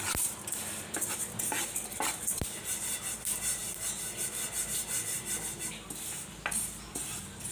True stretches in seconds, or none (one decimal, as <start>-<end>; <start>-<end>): 0.0-7.5